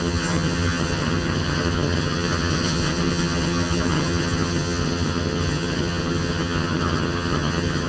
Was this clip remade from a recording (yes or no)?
yes